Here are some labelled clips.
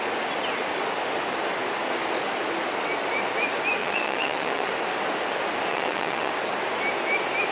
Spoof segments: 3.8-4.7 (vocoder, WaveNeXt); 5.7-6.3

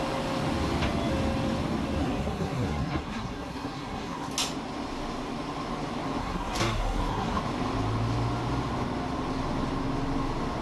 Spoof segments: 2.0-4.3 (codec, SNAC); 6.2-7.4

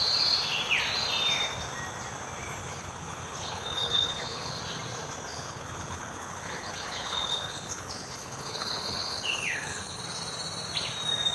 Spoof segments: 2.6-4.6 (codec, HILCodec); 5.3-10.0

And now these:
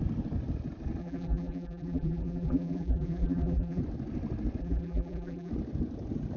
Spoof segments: 1.0-3.8 (vocoder, BigVGAN v2); 4.6-5.5

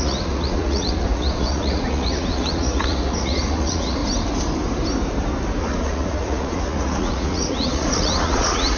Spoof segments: 0.0-4.0 (vocoder, Vocos); 5.6-8.8

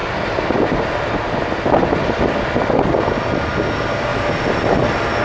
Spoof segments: 4.1-5.2 (vocoder, BigVGAN v2)

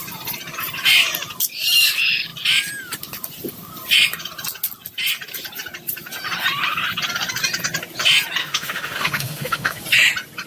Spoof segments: 8.4-9.8 (autoencoder, DAC-VAE)

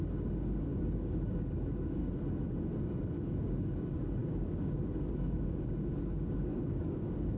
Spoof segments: 0.0-2.0 (codec, DAC); 3.0-7.4